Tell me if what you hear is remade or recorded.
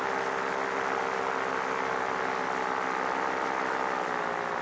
recorded